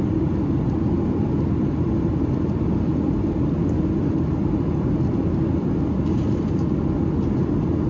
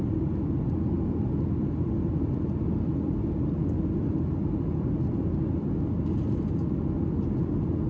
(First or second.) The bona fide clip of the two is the second